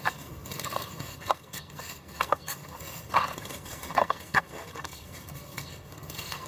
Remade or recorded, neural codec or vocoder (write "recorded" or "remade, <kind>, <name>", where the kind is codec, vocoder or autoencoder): remade, codec, SNAC